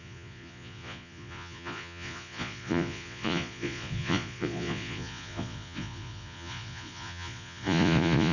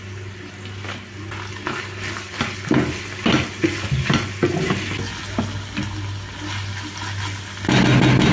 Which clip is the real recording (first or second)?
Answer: second